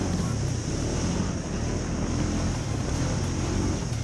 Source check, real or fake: real